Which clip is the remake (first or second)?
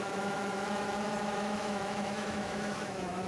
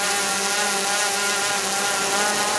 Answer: first